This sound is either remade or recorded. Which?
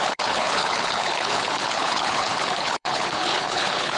remade